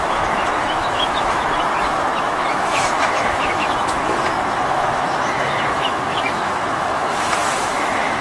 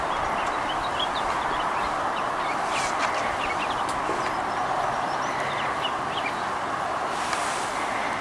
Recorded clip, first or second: second